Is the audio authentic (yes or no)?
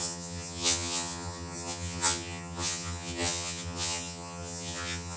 no